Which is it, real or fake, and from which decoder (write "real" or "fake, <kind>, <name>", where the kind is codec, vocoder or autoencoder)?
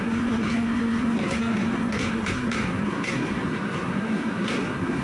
fake, codec, SNAC